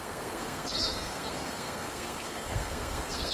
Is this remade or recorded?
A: remade